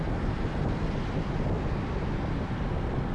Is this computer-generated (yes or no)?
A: no